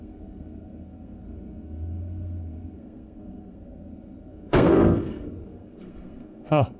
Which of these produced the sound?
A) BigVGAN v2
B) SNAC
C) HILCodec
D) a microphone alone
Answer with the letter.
B